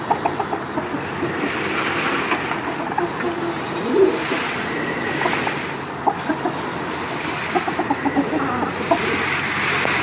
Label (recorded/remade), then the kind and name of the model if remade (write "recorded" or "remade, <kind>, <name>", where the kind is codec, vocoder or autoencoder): recorded